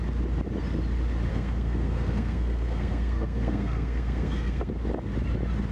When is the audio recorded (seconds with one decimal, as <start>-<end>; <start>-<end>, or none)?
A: 0.0-1.3; 4.7-5.7